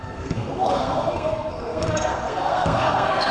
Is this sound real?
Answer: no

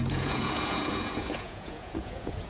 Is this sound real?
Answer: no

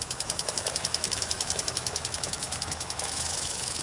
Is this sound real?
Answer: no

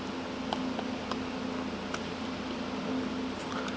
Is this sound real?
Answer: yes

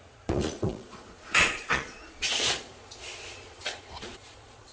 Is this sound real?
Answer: no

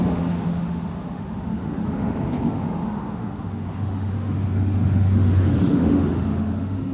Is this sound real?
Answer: no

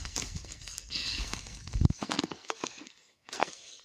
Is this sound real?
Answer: no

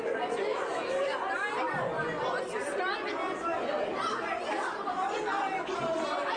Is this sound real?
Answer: yes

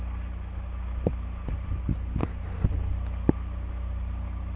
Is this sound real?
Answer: yes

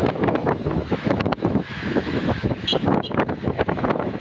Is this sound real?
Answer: no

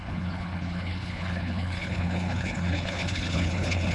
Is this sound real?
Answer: no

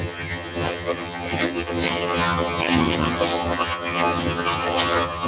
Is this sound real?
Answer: no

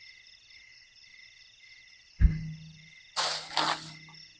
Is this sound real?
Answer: yes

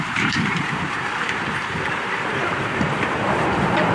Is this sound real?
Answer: no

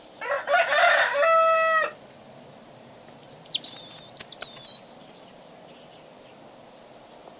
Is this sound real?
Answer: yes